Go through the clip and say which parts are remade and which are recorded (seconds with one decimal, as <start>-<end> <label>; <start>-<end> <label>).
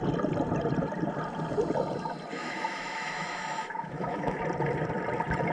0.0-2.3 recorded; 2.3-4.4 remade; 4.4-5.5 recorded